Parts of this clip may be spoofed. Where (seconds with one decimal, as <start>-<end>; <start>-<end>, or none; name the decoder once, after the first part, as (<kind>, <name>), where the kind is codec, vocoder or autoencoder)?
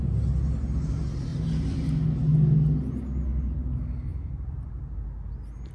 1.3-1.8 (vocoder, BigVGAN v2); 4.1-4.7